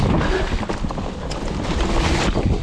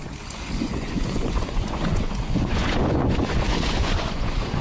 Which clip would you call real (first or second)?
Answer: first